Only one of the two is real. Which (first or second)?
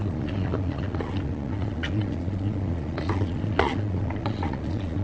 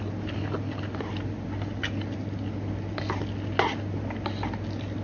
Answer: second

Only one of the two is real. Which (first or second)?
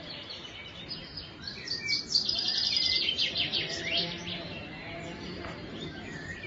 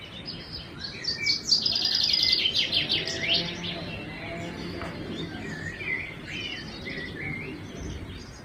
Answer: second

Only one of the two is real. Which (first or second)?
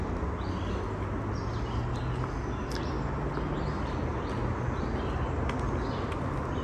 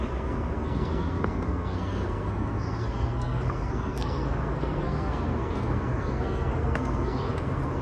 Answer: first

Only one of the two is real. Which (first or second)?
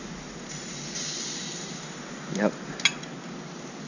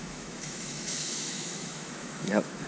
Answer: first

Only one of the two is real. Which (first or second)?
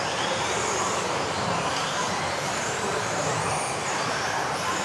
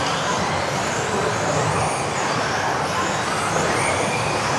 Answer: second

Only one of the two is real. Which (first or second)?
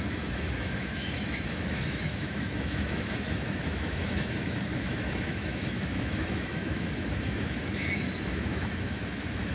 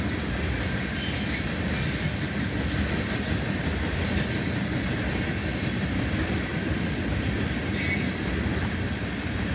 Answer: second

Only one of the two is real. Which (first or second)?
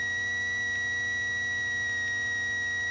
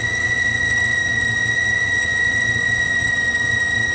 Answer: first